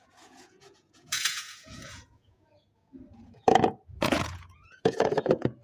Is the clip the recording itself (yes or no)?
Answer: no